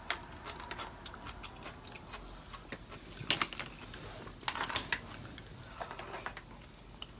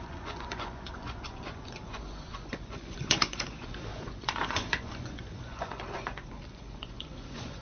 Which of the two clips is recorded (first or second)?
first